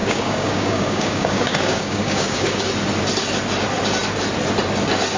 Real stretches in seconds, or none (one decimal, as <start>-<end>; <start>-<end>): 2.6-5.2